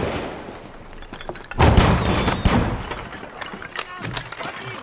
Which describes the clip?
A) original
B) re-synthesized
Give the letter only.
A